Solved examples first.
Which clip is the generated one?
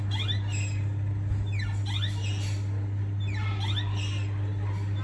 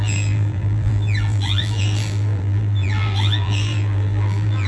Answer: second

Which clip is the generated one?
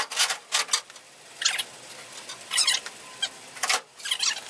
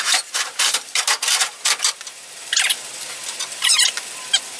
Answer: second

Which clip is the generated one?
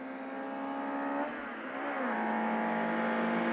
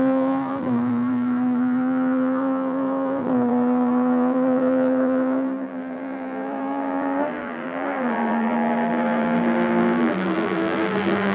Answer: second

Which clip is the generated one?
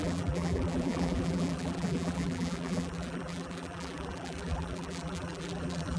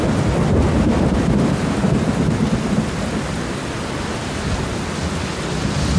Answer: first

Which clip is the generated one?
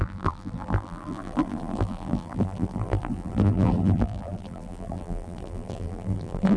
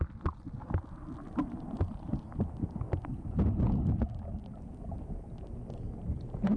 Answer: first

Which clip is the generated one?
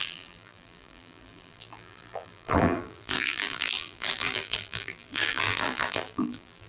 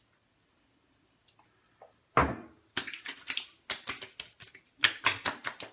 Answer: first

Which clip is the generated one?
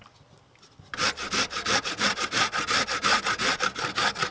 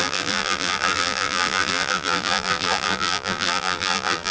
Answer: second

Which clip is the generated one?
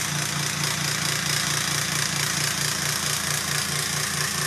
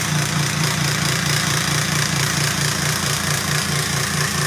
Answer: second